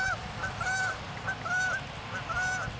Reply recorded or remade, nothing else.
recorded